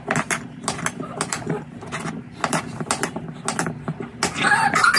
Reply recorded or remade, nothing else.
recorded